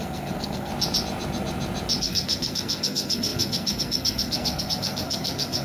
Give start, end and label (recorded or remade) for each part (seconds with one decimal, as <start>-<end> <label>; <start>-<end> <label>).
0.0-0.7 remade; 0.7-2.0 recorded; 2.0-5.6 remade